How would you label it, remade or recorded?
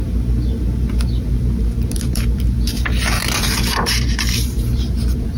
remade